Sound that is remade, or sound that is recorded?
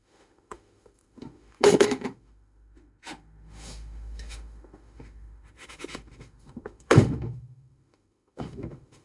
remade